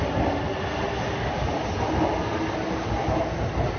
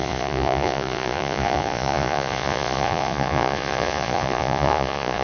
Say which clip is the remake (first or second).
second